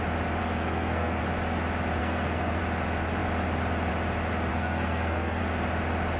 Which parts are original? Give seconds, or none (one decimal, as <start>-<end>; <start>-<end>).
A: 0.0-0.4; 1.2-2.0; 2.6-4.5; 5.4-6.2